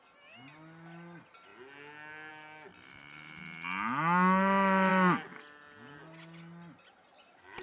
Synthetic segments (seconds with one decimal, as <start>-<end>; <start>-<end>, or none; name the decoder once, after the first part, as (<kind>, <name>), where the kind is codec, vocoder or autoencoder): none

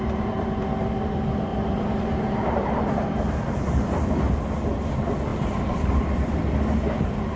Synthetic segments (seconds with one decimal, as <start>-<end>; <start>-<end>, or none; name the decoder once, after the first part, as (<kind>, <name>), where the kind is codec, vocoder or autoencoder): 1.5-4.1 (vocoder, BigVGAN v2); 5.3-5.9

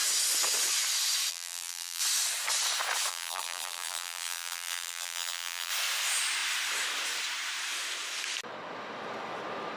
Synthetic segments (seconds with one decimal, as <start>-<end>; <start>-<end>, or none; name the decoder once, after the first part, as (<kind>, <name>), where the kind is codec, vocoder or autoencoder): 1.3-2.0 (vocoder, BigVGAN v2); 3.1-5.7

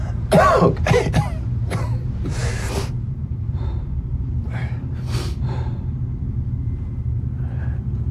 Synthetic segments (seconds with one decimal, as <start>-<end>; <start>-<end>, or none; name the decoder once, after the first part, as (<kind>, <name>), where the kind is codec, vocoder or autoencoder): 0.0-8.1 (vocoder, BigVGAN v2)